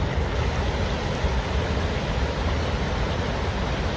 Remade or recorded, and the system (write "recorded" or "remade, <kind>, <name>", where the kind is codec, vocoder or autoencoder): recorded